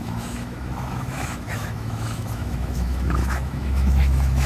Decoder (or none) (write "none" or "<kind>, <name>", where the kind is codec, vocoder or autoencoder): autoencoder, DAC-VAE